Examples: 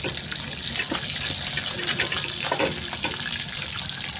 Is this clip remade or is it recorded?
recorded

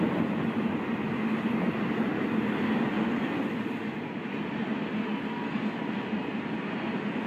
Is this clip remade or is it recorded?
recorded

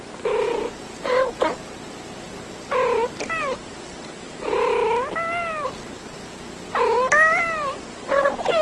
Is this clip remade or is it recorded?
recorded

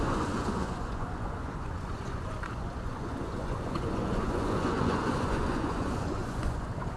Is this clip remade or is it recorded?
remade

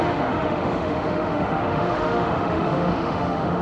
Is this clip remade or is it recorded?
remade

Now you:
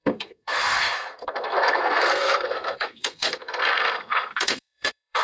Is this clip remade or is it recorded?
remade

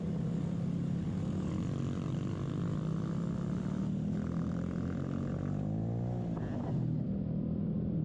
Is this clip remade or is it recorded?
recorded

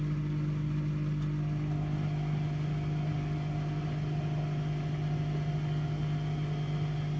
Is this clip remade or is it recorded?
recorded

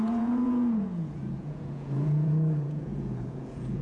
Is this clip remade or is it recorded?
remade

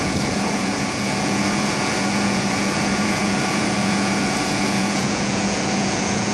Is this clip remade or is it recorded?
remade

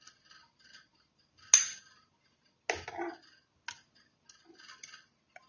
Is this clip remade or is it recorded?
recorded